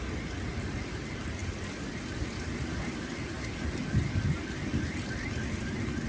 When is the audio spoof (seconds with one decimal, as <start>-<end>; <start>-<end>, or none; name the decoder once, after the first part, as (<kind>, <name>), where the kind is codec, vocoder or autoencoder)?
none